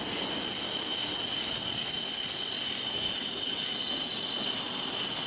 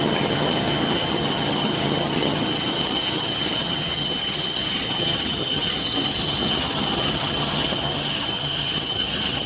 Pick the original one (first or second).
first